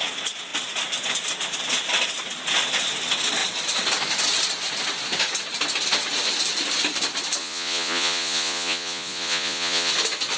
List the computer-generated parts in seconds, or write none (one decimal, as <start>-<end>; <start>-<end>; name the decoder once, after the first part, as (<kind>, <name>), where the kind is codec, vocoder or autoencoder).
7.4-9.9 (vocoder, Vocos)